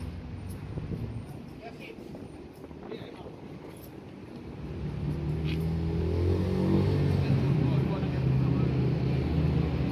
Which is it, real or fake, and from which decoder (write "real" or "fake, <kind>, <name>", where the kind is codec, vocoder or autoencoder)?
real